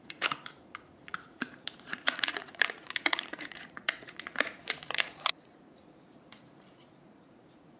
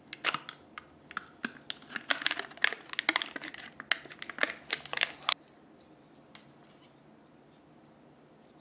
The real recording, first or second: second